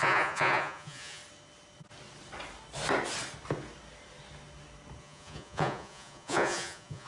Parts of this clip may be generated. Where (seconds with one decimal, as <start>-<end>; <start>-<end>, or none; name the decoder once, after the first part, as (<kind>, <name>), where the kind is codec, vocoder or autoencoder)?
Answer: 0.0-1.2 (vocoder, Vocos); 5.0-7.1